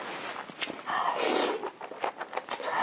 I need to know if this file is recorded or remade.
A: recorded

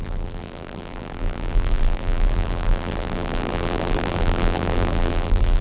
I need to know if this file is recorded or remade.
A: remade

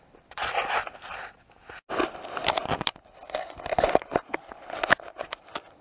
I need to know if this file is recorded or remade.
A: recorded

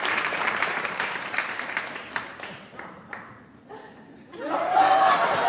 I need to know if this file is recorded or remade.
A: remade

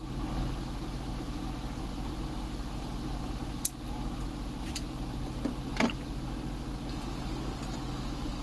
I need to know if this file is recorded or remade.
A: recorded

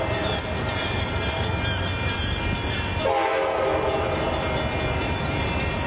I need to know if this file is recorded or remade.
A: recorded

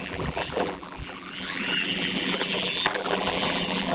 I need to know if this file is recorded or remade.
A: remade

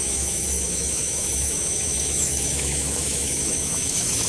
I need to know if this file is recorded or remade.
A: remade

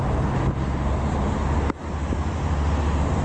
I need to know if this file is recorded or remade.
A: recorded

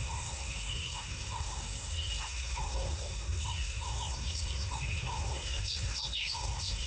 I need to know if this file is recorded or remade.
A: remade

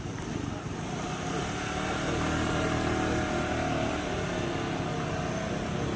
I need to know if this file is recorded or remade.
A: recorded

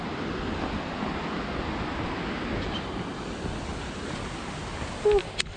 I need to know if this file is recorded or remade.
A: recorded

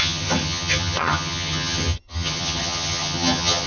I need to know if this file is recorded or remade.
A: remade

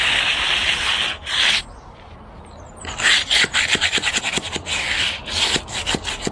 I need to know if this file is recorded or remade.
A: recorded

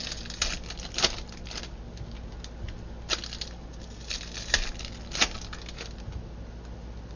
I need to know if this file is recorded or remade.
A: recorded